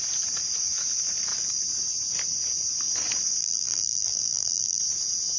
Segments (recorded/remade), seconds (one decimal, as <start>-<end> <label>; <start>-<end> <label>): 0.0-3.4 recorded; 3.4-4.8 remade; 4.8-5.4 recorded